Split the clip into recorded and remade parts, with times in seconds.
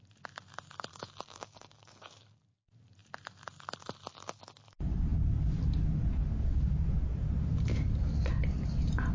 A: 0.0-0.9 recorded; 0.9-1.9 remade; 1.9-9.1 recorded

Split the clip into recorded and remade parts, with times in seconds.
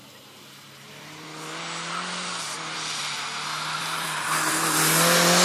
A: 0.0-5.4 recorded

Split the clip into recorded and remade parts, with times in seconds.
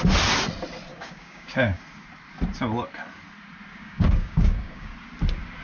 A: 0.0-0.9 recorded; 0.9-1.8 remade; 1.8-3.7 recorded; 3.7-4.9 remade; 4.9-5.6 recorded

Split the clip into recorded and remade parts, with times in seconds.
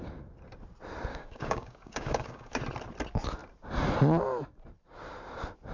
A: 0.0-1.1 recorded; 1.1-2.6 remade; 2.6-5.7 recorded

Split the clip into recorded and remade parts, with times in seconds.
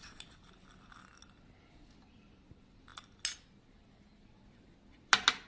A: 0.0-5.5 recorded